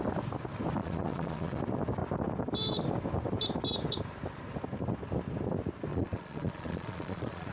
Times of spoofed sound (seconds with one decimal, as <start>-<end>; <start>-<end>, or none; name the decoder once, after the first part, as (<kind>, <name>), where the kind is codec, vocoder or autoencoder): 0.8-1.6 (vocoder, Vocos); 5.9-7.5